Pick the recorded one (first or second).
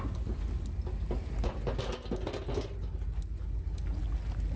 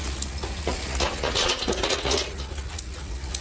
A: first